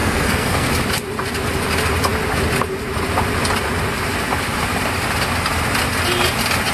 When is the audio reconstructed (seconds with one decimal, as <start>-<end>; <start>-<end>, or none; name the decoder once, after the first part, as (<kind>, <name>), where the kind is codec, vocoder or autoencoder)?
0.0-0.7 (codec, SNAC)